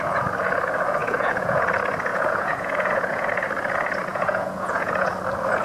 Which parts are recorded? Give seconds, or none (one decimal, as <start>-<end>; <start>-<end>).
0.0-1.0; 1.6-2.1; 3.3-4.1; 5.1-5.6